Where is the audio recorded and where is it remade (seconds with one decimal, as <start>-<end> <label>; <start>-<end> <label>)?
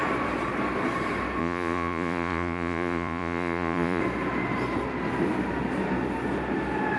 0.0-1.4 recorded; 1.4-4.0 remade; 4.0-7.0 recorded